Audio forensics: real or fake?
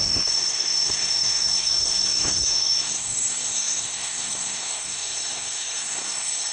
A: fake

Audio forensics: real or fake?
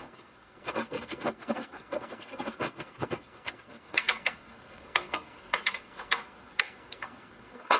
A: fake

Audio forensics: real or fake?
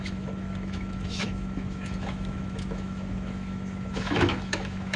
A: fake